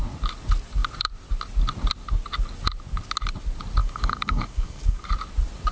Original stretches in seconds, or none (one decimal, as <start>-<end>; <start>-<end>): 0.0-3.8; 5.1-5.7